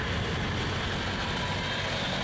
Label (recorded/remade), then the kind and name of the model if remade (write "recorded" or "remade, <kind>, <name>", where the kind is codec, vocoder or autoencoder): recorded